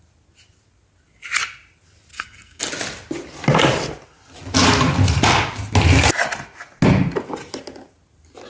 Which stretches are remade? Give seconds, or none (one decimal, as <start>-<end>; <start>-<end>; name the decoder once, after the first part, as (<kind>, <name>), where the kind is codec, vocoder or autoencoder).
2.1-2.7 (codec, SNAC)